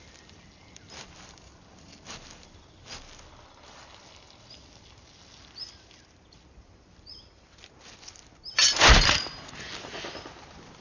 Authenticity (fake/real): real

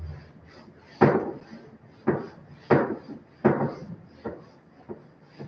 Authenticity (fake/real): real